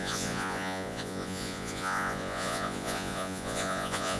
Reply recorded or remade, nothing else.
remade